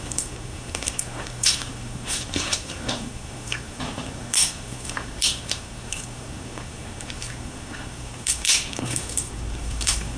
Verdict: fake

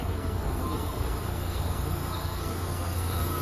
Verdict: fake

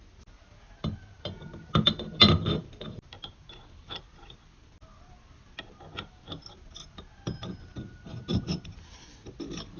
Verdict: real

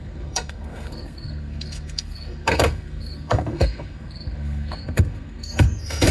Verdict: fake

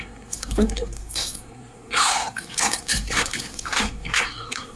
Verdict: fake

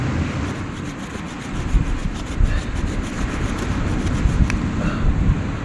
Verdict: real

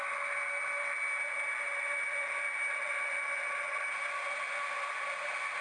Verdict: real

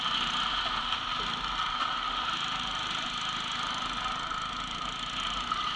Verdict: real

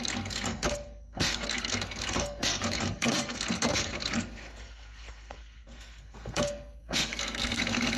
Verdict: fake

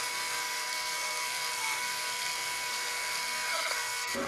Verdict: fake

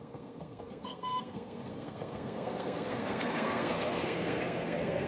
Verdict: fake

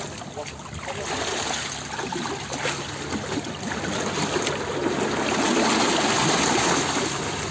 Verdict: real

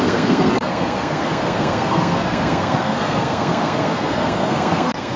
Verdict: fake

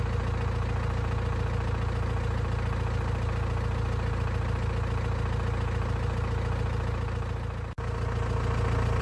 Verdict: real